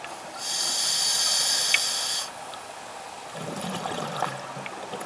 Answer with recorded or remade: recorded